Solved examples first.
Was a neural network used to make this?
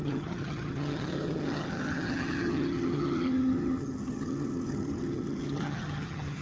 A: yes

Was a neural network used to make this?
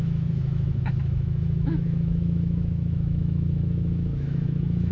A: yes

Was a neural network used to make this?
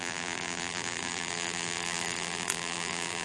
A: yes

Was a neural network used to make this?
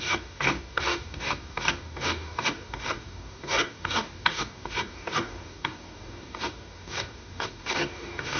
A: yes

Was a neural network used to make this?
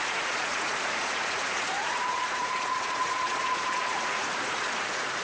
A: yes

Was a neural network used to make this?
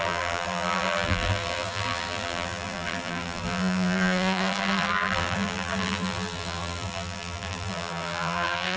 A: yes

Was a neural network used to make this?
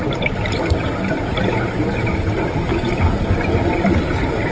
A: no